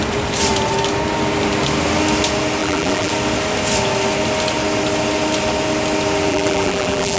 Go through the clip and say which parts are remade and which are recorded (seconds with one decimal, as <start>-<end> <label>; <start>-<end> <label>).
0.0-2.6 recorded; 2.6-3.1 remade; 3.1-6.3 recorded; 6.3-7.2 remade